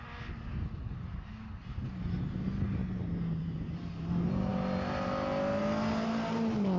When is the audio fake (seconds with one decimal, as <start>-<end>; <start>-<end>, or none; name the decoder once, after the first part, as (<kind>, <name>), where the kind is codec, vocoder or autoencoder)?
none

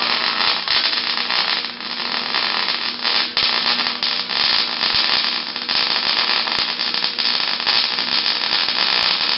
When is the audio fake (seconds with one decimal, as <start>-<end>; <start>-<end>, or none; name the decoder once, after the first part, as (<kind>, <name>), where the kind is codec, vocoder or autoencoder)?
none